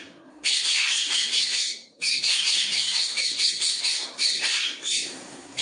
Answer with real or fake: fake